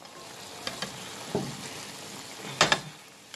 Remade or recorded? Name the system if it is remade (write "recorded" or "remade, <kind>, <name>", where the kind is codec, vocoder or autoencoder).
recorded